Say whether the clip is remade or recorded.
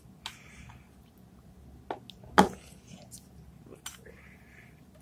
recorded